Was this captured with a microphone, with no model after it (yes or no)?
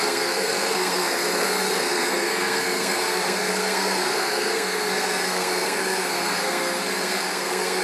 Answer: no